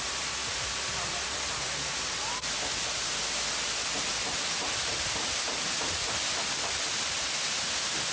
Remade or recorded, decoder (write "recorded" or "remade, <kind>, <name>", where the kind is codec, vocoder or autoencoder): remade, vocoder, BigVGAN v2